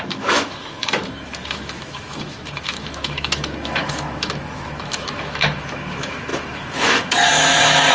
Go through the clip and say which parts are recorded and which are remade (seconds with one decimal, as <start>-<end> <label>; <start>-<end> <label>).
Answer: 0.0-7.9 remade